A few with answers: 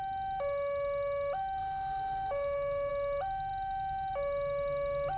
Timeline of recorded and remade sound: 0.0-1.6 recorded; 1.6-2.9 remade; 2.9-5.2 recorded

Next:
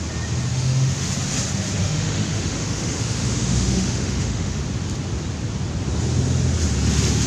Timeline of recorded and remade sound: 0.0-0.5 recorded; 0.5-1.1 remade; 1.1-1.8 recorded; 1.8-4.6 remade; 4.6-7.3 recorded